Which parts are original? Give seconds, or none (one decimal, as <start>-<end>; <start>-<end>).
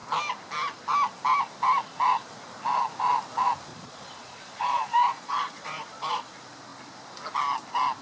0.0-3.7; 6.3-8.0